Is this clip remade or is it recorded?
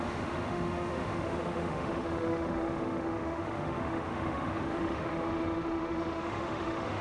remade